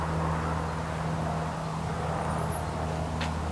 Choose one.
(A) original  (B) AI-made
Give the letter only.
A